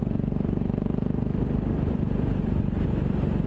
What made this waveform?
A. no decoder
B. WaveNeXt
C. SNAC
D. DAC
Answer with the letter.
A